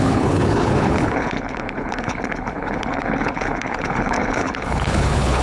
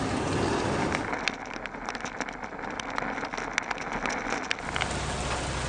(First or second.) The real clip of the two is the second